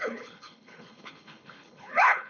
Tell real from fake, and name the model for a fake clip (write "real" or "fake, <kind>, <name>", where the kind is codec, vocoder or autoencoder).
fake, codec, HILCodec